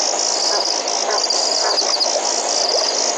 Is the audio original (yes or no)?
yes